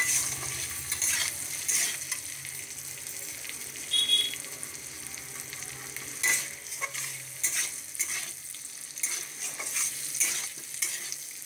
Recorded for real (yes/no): yes